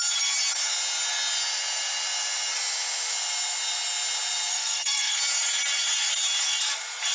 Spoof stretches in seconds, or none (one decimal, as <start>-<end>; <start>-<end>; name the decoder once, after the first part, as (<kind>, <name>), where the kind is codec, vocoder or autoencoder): 4.5-5.2 (codec, SNAC)